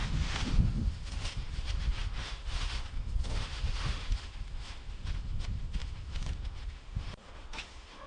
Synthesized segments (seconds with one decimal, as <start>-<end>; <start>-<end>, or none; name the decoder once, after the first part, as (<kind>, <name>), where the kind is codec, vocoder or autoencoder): 0.0-8.1 (autoencoder, DAC-VAE)